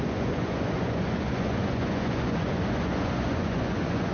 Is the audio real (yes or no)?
no